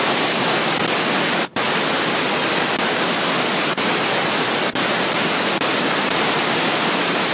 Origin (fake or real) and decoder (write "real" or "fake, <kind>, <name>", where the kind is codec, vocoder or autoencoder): real